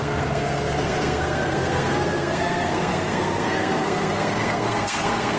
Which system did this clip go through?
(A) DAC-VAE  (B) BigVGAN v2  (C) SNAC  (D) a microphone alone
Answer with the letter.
C